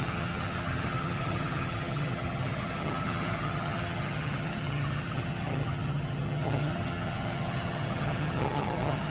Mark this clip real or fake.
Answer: fake